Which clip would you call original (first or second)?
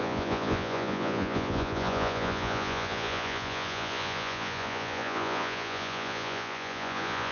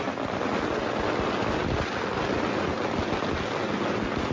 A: second